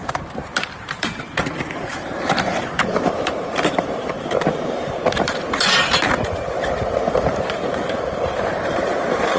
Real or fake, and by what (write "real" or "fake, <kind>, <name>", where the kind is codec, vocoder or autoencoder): fake, vocoder, BigVGAN v2